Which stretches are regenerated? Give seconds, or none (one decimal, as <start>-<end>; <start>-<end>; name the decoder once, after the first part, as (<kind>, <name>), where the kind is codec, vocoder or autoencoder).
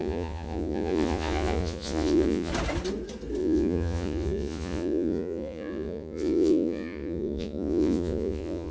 0.0-2.5 (vocoder, Vocos); 3.4-8.7